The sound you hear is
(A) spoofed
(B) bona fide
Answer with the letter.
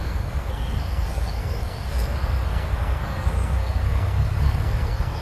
A